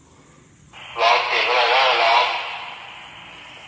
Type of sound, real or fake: real